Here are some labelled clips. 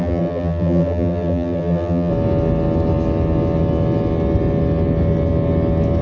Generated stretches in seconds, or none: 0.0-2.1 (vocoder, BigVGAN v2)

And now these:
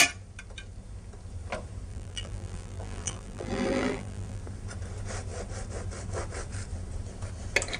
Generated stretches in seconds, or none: 1.9-4.4 (vocoder, BigVGAN v2)

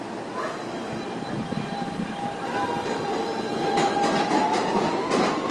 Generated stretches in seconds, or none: 0.6-3.8 (vocoder, BigVGAN v2)

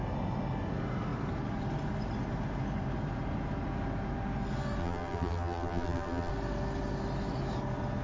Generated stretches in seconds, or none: 4.8-6.3 (vocoder, BigVGAN v2)

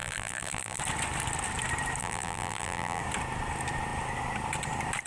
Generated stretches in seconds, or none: 0.0-0.8 (vocoder, BigVGAN v2); 2.0-3.0

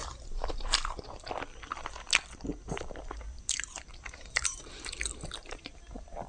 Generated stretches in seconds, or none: 0.0-1.0 (vocoder, BigVGAN v2); 2.5-4.9; 5.4-6.3

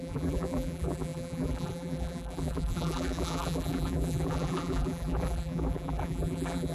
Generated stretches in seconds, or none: 0.0-6.7 (vocoder, BigVGAN v2)

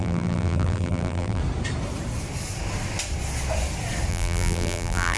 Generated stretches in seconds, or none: 0.0-1.4 (vocoder, BigVGAN v2); 4.1-5.2